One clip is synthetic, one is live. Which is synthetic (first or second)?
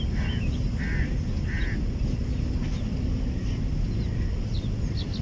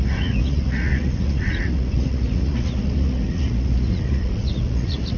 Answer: second